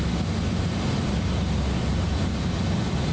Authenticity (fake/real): real